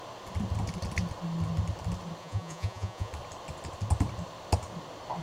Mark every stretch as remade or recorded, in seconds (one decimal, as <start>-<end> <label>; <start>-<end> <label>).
0.0-2.2 recorded; 2.2-3.1 remade; 3.1-5.2 recorded